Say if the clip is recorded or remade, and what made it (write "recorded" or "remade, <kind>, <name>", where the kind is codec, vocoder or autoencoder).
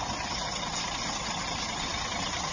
recorded